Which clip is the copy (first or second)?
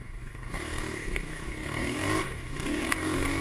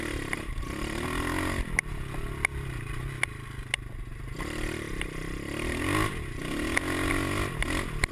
first